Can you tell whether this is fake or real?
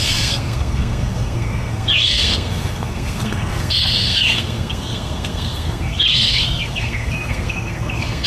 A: fake